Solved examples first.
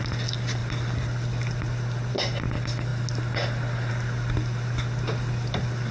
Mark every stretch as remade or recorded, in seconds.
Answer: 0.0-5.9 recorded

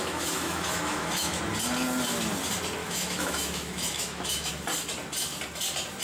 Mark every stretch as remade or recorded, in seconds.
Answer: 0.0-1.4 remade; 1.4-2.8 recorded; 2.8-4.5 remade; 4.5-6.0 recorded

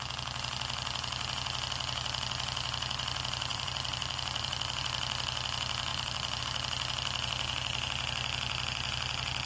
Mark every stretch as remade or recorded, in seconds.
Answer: 0.0-3.5 recorded; 3.5-4.8 remade; 4.8-5.9 recorded; 5.9-6.4 remade; 6.4-9.5 recorded